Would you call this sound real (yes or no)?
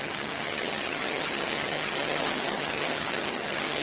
no